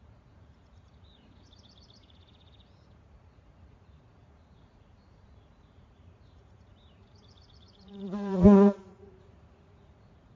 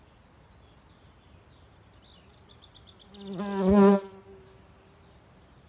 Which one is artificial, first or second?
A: first